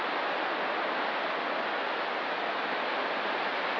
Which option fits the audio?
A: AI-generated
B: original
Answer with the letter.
B